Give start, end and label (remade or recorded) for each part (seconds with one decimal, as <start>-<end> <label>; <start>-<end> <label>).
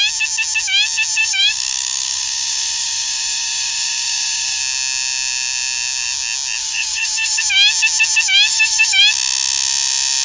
0.0-1.2 recorded; 1.2-4.6 remade; 4.6-6.6 recorded; 6.6-7.4 remade; 7.4-8.5 recorded; 8.5-9.0 remade; 9.0-10.2 recorded